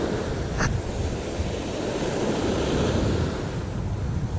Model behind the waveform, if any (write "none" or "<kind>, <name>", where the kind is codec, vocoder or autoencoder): none